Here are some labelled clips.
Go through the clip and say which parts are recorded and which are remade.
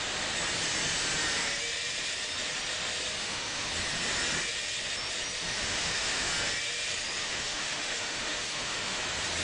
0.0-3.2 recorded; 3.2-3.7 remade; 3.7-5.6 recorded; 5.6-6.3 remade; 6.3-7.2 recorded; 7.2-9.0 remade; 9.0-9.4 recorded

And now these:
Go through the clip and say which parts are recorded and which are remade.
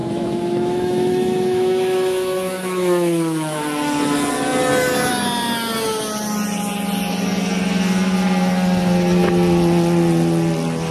0.0-3.6 remade; 3.6-10.9 recorded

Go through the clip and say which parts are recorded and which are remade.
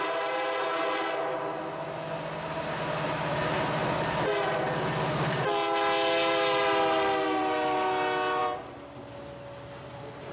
0.0-10.3 recorded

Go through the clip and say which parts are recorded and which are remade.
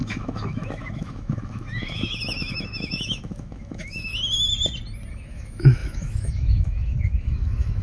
0.0-4.1 remade; 4.1-5.1 recorded; 5.1-7.8 remade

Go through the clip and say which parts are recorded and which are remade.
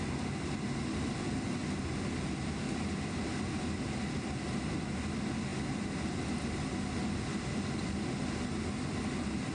0.0-9.5 recorded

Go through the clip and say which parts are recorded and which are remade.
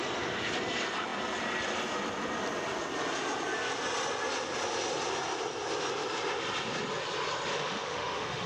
0.0-7.5 recorded; 7.5-8.5 remade